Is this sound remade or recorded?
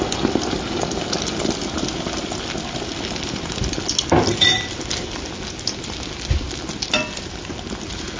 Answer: recorded